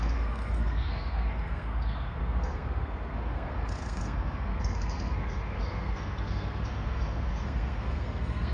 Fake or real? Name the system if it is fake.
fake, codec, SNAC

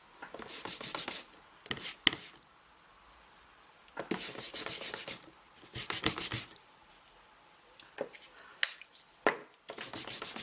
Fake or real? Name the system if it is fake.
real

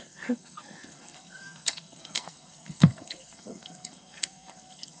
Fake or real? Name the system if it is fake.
fake, codec, SNAC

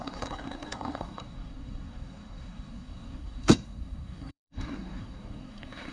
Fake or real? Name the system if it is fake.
fake, codec, SNAC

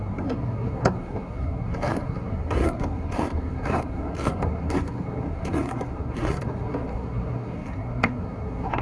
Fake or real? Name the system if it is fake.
fake, codec, SNAC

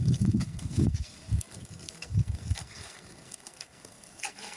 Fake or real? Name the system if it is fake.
fake, codec, SNAC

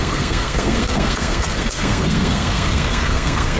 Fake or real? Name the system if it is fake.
fake, codec, SNAC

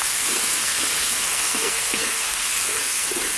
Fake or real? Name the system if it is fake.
fake, codec, SNAC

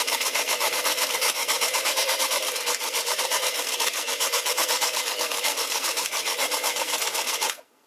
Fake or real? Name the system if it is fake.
fake, codec, SNAC